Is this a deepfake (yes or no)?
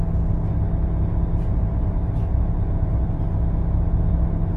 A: no